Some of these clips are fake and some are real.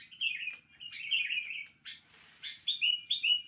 real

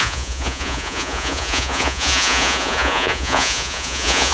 fake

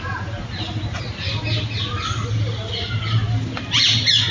real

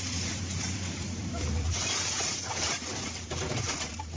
fake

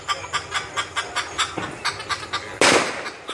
real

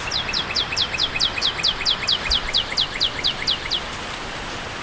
real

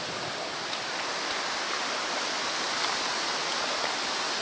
real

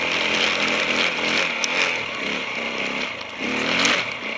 real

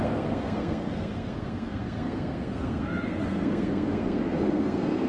fake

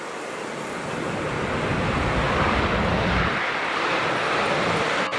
real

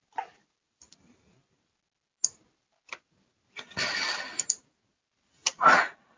real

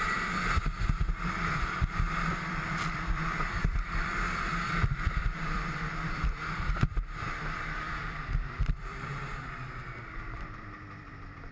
fake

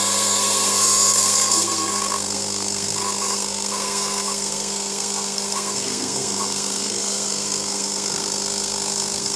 fake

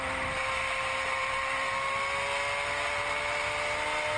real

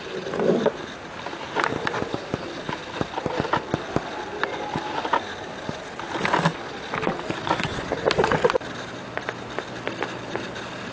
real